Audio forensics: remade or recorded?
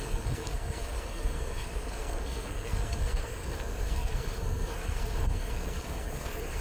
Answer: remade